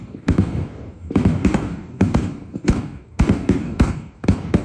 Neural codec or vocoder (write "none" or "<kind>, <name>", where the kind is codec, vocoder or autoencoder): codec, DAC